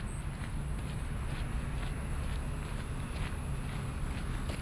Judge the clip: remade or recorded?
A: recorded